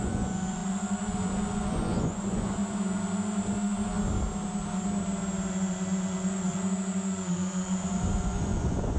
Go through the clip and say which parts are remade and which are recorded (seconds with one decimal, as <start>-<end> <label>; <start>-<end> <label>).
0.0-2.6 remade; 2.6-5.5 recorded; 5.5-9.0 remade